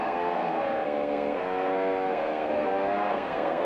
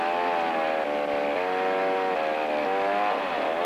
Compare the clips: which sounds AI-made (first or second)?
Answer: first